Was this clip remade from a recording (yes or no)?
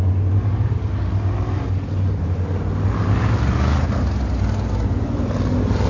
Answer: no